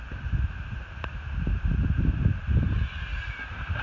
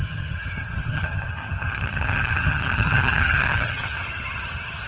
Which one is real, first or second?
first